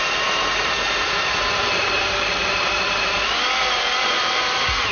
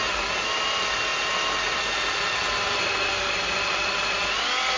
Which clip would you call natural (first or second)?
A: second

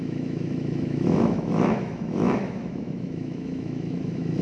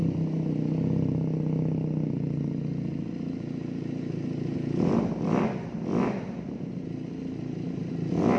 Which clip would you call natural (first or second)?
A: second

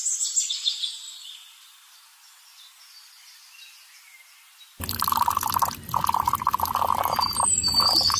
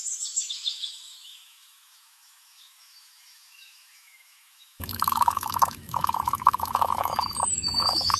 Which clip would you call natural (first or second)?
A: first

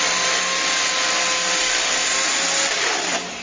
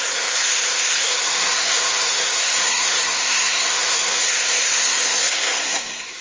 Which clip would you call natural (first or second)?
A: first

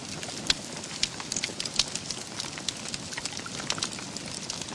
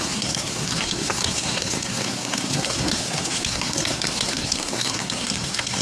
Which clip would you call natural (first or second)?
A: first